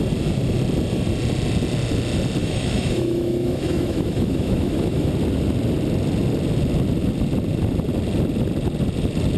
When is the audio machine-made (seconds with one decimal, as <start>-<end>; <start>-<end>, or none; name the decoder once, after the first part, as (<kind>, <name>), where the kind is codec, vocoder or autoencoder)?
2.4-5.1 (autoencoder, DAC-VAE)